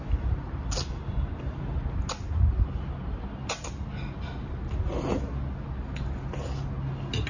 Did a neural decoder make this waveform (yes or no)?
no